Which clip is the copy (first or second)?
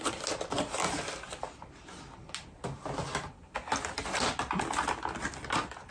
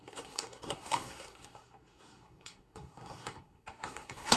second